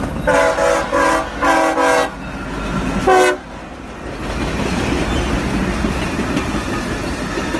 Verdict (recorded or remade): recorded